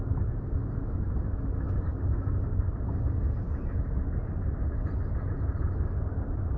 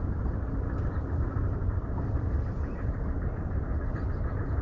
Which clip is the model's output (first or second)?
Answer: second